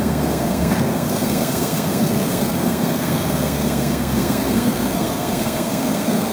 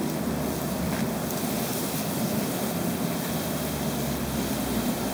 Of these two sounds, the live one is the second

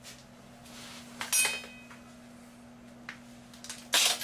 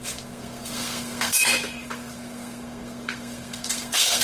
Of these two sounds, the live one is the first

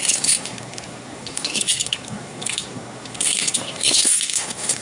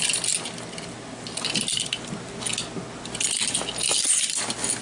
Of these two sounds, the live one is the second